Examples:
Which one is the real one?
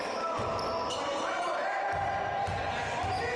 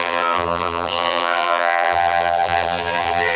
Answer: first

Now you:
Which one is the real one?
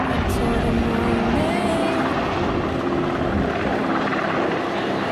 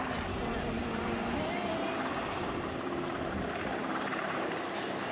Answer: first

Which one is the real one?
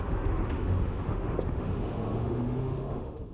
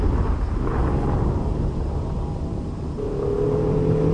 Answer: second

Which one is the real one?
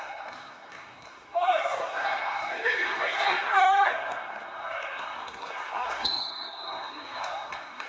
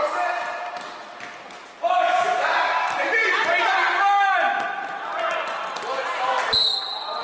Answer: second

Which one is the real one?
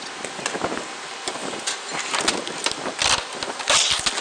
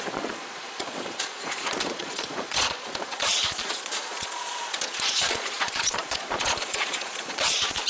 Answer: first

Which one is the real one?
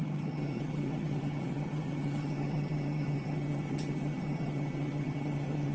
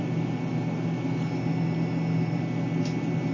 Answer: second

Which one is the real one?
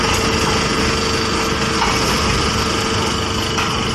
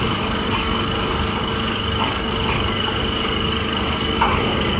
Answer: first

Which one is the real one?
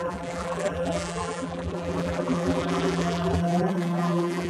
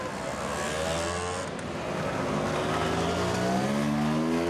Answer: second